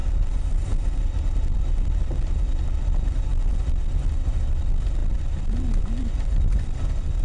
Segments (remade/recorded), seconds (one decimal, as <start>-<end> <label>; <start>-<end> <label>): 0.0-7.2 recorded